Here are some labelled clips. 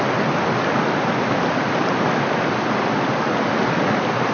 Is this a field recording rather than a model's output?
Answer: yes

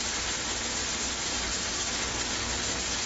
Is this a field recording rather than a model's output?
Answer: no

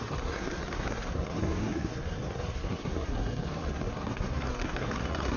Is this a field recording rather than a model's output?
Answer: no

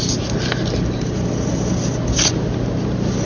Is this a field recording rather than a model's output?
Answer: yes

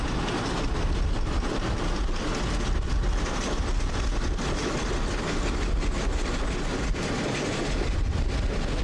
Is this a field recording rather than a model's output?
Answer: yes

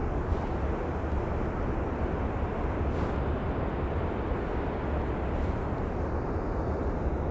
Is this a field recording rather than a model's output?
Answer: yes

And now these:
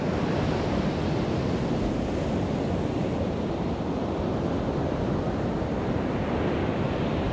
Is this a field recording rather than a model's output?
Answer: yes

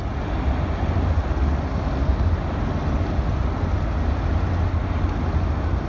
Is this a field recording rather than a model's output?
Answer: yes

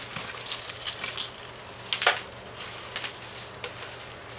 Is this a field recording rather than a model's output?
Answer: yes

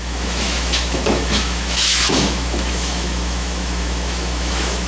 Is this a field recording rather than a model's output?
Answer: no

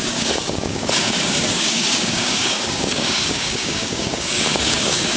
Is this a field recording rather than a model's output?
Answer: no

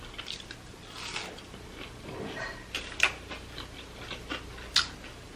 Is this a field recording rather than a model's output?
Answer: yes